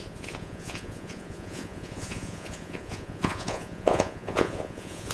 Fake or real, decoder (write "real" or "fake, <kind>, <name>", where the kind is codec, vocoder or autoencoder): fake, vocoder, Vocos